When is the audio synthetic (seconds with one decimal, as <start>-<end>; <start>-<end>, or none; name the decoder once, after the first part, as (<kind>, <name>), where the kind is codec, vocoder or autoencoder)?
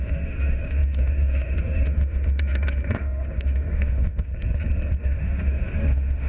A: 0.0-4.3 (autoencoder, DAC-VAE); 5.0-6.3